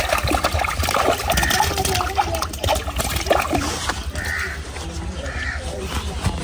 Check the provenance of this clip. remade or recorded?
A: recorded